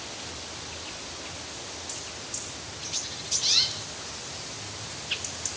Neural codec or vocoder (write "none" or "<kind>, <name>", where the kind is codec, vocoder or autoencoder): none